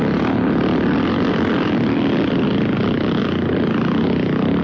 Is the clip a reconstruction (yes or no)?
no